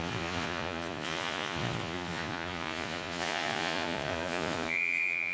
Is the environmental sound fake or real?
fake